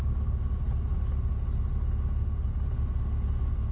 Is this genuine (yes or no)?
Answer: yes